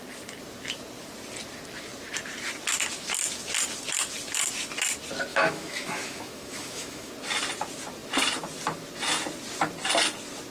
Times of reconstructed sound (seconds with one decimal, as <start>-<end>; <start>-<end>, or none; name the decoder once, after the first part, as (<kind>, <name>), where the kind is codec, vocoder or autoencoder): 5.3-7.1 (autoencoder, DAC-VAE)